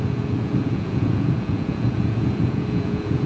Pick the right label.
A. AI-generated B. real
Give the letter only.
A